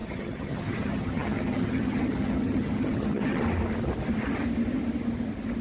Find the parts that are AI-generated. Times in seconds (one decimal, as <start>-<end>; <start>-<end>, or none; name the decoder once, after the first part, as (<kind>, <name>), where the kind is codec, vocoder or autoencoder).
0.0-3.4 (vocoder, HiFi-GAN)

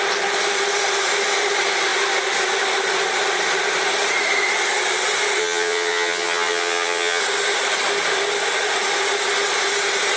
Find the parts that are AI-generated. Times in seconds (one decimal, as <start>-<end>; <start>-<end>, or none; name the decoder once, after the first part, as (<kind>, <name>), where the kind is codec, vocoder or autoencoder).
5.4-7.2 (vocoder, HiFi-GAN)

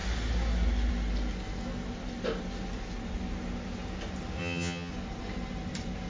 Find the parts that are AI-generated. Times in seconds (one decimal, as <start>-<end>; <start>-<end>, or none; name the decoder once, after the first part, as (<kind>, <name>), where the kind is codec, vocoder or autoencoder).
4.4-4.9 (vocoder, HiFi-GAN)

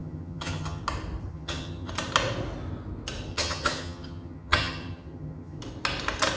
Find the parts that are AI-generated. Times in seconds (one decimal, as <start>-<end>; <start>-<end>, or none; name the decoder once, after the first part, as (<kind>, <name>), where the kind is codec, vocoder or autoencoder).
0.0-0.8 (vocoder, HiFi-GAN); 1.3-1.9; 3.3-5.6